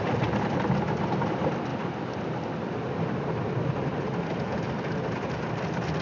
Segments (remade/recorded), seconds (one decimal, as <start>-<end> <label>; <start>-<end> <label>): 0.0-6.0 recorded